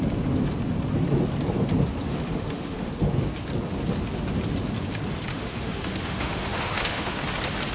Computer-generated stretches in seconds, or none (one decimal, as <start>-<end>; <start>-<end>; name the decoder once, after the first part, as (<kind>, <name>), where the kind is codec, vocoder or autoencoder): 2.1-2.9 (autoencoder, DAC-VAE); 5.3-7.1